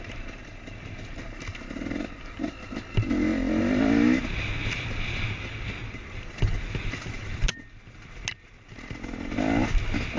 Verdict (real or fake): real